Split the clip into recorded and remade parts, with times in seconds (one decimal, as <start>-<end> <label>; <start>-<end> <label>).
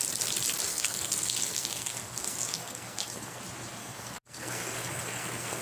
0.0-0.7 recorded; 0.7-3.4 remade; 3.4-3.8 recorded; 3.8-5.6 remade